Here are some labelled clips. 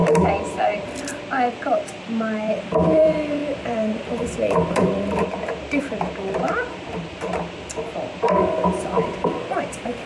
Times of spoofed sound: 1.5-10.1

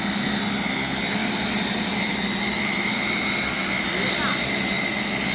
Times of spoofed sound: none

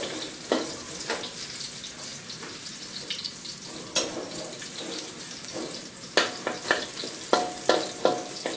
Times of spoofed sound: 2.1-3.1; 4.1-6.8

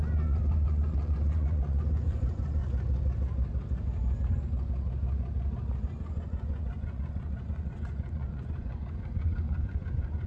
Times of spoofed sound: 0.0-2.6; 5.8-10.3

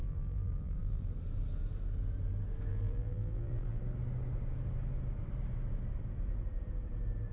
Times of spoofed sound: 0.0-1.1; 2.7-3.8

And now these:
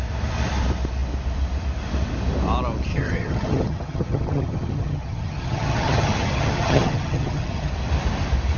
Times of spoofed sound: 2.9-7.7

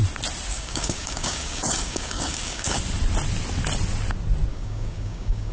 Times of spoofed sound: 0.5-2.8; 4.5-5.5

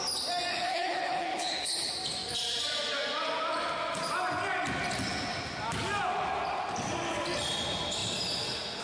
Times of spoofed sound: 0.5-1.9